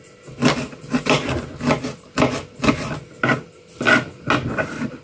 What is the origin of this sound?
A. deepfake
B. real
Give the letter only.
B